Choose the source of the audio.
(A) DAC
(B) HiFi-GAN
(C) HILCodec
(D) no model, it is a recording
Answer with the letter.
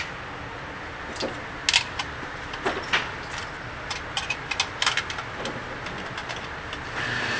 D